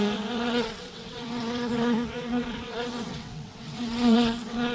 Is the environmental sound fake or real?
fake